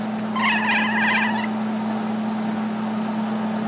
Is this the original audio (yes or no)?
yes